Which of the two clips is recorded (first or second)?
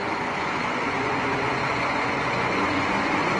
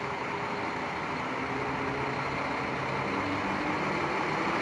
second